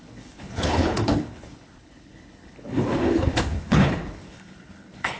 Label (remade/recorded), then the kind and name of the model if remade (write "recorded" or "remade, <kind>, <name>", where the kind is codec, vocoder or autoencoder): remade, codec, HILCodec